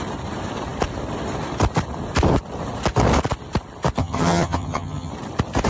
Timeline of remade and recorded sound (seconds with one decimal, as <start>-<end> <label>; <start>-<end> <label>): 0.0-4.0 recorded; 4.0-5.1 remade; 5.1-5.7 recorded